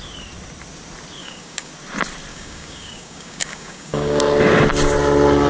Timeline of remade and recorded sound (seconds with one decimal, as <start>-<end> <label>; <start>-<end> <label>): 0.0-1.2 recorded; 1.2-1.7 remade; 1.7-2.3 recorded; 2.3-4.2 remade; 4.2-5.5 recorded